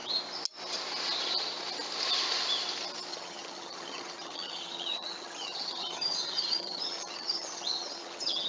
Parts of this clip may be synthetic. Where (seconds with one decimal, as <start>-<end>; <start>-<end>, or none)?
3.1-8.5